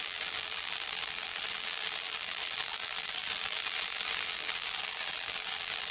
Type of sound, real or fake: fake